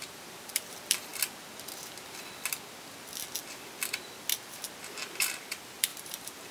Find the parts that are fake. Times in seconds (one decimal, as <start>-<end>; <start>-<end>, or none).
0.0-1.1; 5.0-6.5